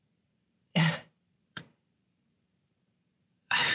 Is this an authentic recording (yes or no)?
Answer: no